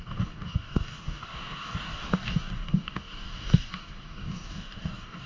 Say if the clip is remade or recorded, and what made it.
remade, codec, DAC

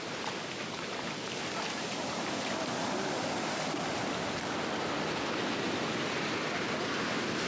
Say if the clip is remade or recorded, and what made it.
recorded